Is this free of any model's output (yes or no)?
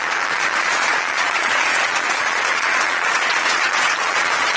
no